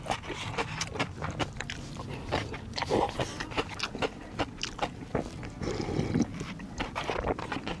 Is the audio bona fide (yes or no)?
yes